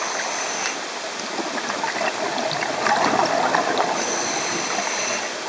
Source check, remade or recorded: recorded